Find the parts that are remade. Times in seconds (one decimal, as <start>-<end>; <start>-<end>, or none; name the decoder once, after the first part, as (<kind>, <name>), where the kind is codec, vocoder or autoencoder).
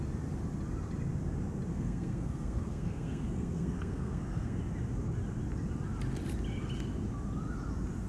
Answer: 1.7-4.6 (codec, SNAC)